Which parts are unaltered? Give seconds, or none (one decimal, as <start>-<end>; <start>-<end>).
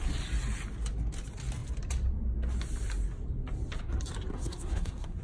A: 0.0-4.3